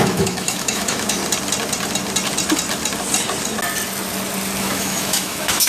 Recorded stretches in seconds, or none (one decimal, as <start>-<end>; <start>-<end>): 1.2-4.6